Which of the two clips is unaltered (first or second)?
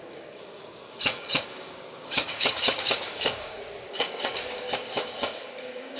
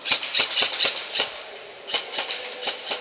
second